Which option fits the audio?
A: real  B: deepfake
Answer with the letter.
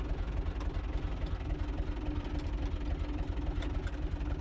A